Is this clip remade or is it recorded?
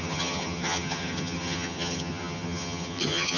remade